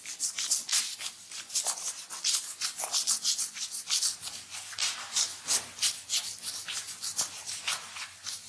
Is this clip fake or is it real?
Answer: fake